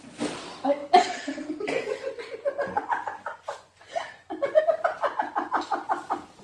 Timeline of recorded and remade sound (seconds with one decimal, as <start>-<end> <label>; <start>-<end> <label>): 0.0-0.8 recorded; 0.8-4.6 remade; 4.6-6.4 recorded